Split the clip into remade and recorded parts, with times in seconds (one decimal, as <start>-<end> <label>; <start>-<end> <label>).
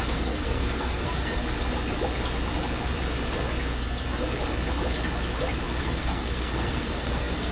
0.0-1.4 remade; 1.4-5.8 recorded; 5.8-7.5 remade